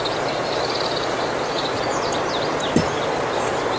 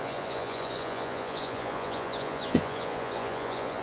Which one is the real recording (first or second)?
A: first